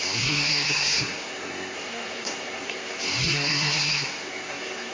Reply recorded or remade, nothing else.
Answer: remade